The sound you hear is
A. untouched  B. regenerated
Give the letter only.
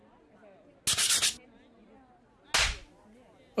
A